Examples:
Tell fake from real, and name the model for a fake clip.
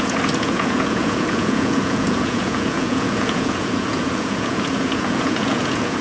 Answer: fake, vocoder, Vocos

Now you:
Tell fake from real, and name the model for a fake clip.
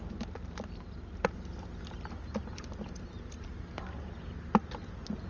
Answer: real